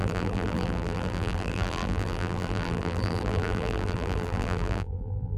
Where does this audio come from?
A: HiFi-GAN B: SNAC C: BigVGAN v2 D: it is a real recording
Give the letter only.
C